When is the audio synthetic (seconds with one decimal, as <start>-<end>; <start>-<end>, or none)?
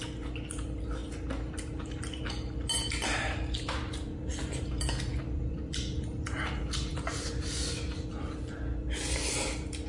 5.1-6.4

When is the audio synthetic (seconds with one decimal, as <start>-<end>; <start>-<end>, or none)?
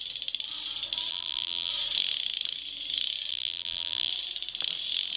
1.1-1.7; 3.3-4.1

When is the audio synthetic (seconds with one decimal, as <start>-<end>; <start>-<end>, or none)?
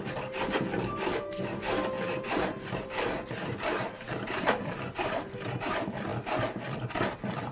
0.0-1.4; 2.1-6.1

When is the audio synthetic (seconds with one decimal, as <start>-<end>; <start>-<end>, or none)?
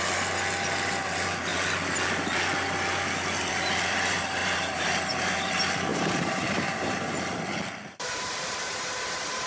4.4-5.5; 5.9-7.1; 7.9-8.7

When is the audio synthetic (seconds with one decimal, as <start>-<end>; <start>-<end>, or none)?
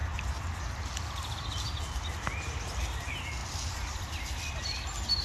3.4-4.2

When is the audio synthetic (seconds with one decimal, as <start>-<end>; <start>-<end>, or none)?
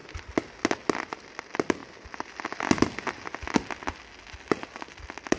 none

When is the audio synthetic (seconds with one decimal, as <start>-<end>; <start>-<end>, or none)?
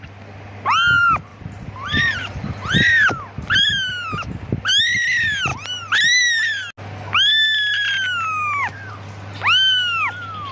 1.3-3.7; 5.5-6.4; 7.7-8.9